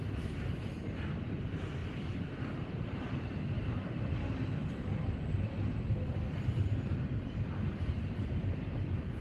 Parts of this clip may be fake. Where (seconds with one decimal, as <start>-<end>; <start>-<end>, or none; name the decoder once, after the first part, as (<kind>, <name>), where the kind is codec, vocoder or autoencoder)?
none

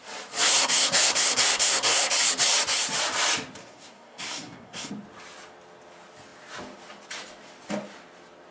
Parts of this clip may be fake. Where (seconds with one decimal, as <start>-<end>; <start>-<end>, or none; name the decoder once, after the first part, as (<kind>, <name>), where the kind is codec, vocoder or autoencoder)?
0.5-2.1 (codec, SNAC); 3.6-4.9

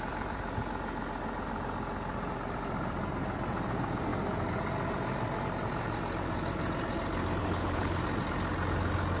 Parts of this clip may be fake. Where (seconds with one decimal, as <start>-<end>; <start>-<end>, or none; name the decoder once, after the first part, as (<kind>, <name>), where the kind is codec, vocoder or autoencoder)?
7.4-8.0 (codec, HILCodec)

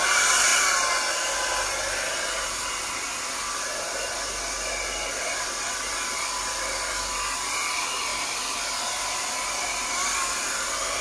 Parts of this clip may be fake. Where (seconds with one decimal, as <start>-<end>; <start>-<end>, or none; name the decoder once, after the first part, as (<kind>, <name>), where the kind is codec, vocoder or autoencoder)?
none

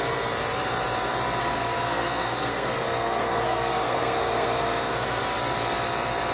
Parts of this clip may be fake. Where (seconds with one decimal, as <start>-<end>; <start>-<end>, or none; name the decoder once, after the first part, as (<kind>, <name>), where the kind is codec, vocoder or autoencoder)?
1.4-5.2 (codec, SNAC)

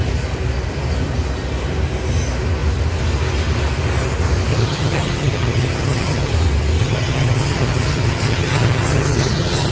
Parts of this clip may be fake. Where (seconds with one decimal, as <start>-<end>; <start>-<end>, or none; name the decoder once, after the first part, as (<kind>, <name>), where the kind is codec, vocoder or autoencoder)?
4.5-6.3 (vocoder, HiFi-GAN); 6.8-9.7